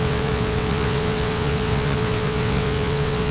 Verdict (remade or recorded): remade